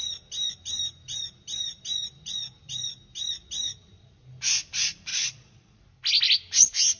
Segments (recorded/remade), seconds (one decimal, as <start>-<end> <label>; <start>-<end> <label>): 0.0-5.1 recorded; 5.1-5.8 remade; 5.8-7.0 recorded